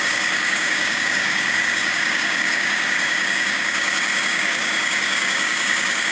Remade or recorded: remade